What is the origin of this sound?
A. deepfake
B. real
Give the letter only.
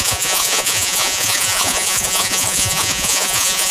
A